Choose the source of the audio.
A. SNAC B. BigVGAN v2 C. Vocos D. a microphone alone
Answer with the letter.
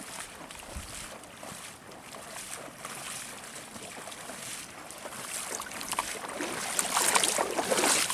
B